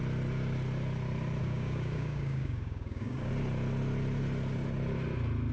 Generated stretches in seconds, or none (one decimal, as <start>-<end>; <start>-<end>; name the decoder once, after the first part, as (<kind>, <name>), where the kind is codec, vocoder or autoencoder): 1.4-3.3 (codec, DAC)